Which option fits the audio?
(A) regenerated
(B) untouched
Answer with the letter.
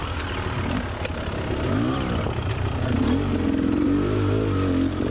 B